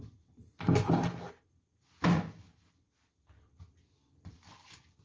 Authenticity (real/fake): real